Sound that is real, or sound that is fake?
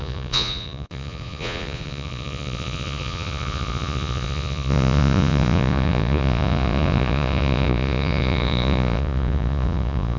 fake